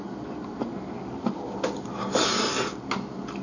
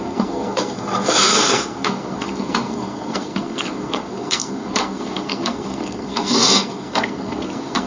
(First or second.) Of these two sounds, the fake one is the second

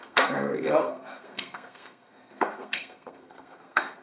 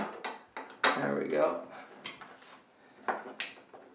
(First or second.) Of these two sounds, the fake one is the first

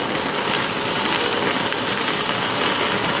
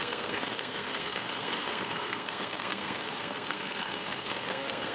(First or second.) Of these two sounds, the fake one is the second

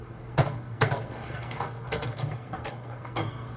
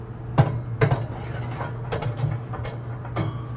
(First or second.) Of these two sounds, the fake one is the first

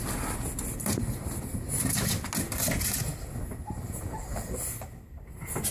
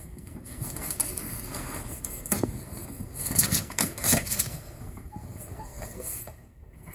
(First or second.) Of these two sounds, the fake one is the second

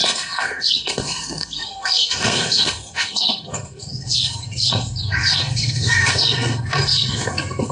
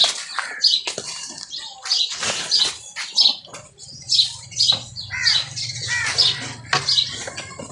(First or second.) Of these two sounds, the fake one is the first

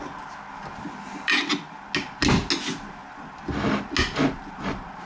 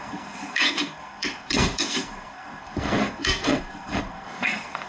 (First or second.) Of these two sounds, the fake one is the second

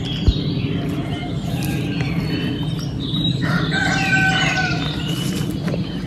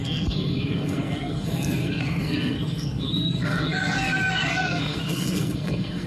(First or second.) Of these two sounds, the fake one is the second